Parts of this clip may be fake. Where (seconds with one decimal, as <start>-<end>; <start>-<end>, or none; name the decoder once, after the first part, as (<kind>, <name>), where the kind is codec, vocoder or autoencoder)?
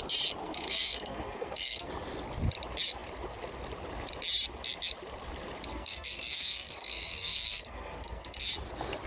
0.4-1.9 (codec, SNAC); 5.7-8.4